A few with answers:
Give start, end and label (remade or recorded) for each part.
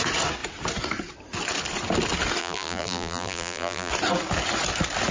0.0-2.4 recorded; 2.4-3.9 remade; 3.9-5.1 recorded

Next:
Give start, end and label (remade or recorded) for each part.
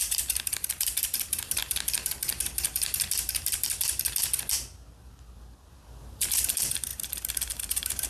0.0-1.6 remade; 1.6-6.0 recorded; 6.0-8.1 remade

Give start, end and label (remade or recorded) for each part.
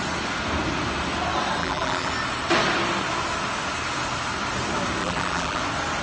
0.0-1.6 recorded; 1.6-2.1 remade; 2.1-5.0 recorded; 5.0-5.6 remade; 5.6-6.0 recorded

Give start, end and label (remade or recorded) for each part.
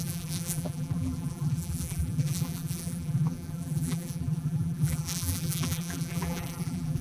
0.0-7.0 remade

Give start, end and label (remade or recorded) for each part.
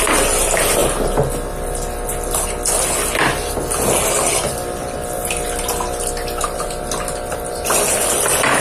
0.0-8.6 recorded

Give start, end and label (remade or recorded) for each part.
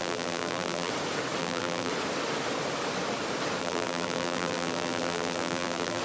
0.0-0.9 remade; 0.9-1.4 recorded; 1.4-1.9 remade; 1.9-3.6 recorded; 3.6-6.0 remade